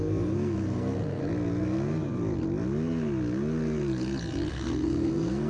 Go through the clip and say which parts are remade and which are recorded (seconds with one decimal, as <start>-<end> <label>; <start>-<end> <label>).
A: 0.0-1.2 remade; 1.2-4.5 recorded; 4.5-5.5 remade